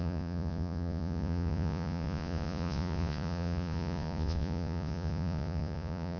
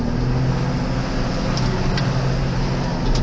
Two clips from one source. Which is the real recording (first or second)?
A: second